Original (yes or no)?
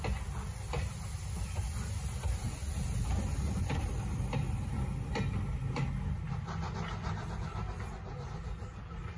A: yes